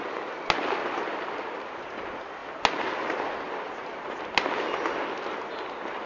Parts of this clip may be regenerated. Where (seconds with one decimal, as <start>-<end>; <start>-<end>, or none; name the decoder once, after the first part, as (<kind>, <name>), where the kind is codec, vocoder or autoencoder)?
none